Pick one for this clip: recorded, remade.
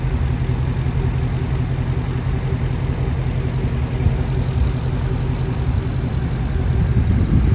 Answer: recorded